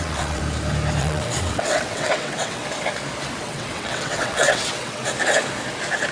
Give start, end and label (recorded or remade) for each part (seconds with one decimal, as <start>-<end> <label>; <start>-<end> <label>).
0.0-0.4 remade; 0.4-1.0 recorded; 1.0-2.6 remade; 2.6-3.4 recorded; 3.4-5.0 remade; 5.0-6.1 recorded